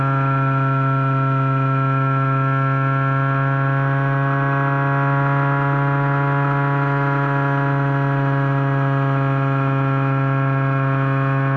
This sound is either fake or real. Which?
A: real